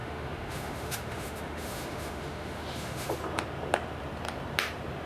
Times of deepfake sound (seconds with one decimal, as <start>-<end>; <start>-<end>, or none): 0.0-3.1